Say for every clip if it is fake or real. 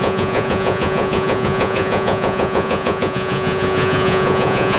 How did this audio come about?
fake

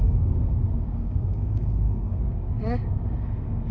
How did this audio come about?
fake